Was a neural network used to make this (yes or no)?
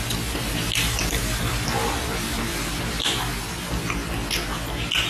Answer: no